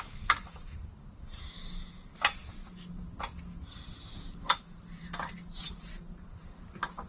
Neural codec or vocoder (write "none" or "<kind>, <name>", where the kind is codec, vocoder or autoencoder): none